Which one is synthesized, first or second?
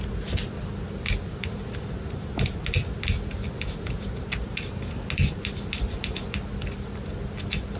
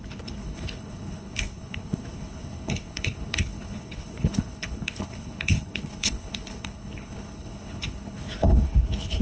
second